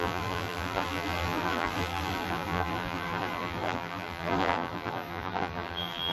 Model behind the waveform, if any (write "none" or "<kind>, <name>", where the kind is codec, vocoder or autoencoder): vocoder, BigVGAN v2